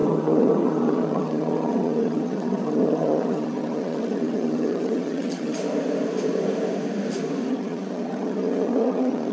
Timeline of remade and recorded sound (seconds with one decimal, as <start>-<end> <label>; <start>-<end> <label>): 0.0-5.6 remade; 5.6-7.5 recorded; 7.5-9.3 remade